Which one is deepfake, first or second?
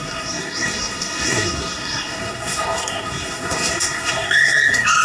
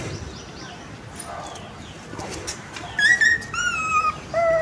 first